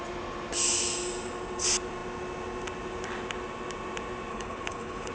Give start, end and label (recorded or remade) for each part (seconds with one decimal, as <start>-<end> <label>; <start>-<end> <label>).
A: 0.0-4.3 recorded; 4.3-5.1 remade